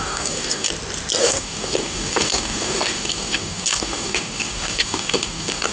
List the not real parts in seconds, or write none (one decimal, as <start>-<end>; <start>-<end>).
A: 0.0-0.7; 1.2-5.7